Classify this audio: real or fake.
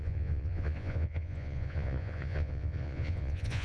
fake